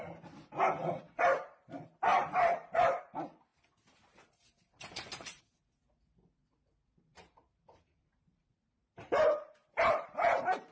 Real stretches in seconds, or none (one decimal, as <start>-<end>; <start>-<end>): 0.0-2.1; 3.0-3.5; 5.4-6.4